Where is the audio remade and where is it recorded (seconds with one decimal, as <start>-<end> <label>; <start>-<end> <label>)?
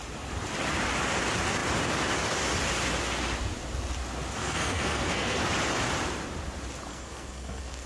0.0-4.4 recorded; 4.4-5.4 remade; 5.4-6.9 recorded; 6.9-7.9 remade